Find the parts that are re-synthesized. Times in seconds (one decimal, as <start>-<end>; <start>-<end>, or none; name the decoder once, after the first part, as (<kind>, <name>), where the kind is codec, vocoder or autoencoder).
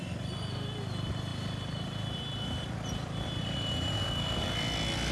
1.3-4.4 (vocoder, BigVGAN v2)